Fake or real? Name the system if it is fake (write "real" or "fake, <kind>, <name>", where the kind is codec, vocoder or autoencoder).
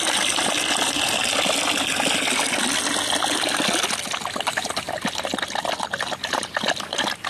real